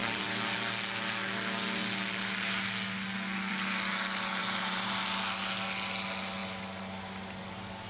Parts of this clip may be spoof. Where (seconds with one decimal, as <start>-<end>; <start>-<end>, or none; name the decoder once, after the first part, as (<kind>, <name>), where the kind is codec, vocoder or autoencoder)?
0.0-0.7 (vocoder, BigVGAN v2); 4.4-4.9